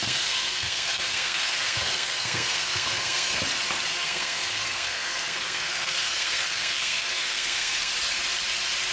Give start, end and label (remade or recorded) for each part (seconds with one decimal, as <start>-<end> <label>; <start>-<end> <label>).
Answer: 0.0-3.4 remade; 3.4-3.9 recorded; 3.9-7.9 remade; 7.9-8.9 recorded